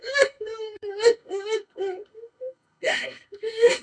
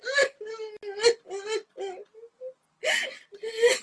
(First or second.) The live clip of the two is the second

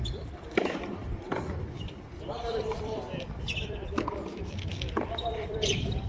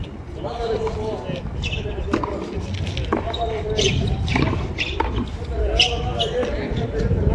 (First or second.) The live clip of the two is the second